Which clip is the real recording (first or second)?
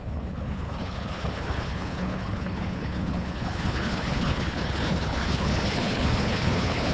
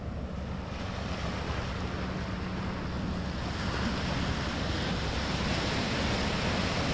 second